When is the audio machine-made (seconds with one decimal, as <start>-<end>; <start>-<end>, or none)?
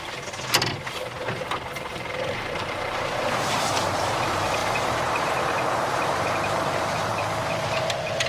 1.9-4.1; 4.6-7.9